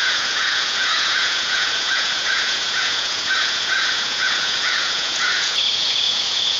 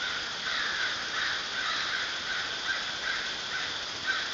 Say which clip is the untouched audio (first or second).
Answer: second